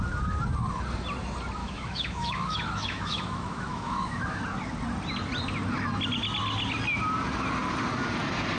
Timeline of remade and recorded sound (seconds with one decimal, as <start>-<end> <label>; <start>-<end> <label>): 0.0-1.6 recorded; 1.6-4.4 remade; 4.4-8.6 recorded